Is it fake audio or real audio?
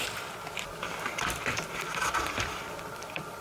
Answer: real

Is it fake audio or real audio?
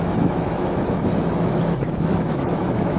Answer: fake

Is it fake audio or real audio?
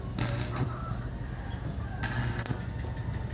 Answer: real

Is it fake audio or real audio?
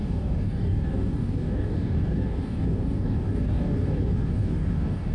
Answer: fake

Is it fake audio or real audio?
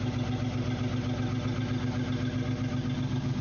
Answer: real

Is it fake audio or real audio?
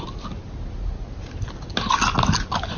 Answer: real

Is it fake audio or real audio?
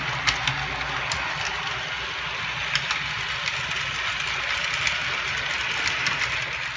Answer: real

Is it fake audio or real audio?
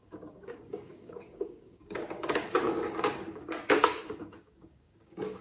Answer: fake